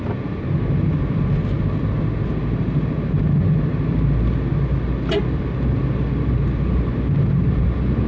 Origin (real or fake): real